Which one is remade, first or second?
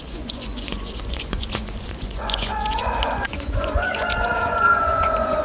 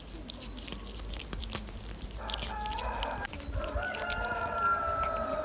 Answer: first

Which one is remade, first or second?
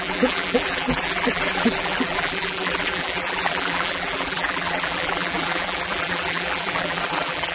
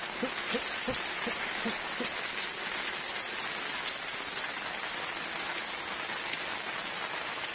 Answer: first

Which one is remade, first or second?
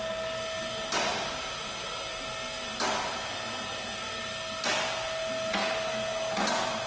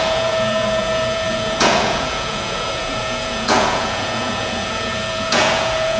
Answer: second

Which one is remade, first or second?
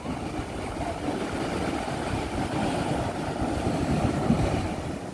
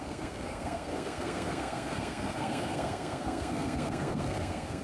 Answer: second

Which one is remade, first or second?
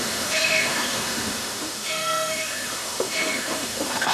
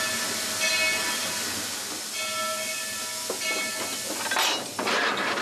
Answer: first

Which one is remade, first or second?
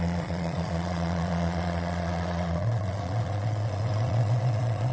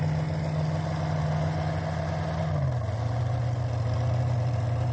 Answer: first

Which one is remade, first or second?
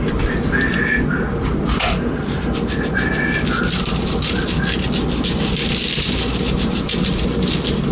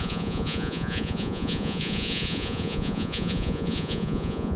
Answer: second